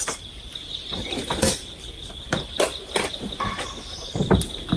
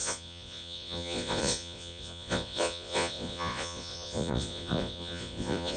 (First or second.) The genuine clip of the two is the first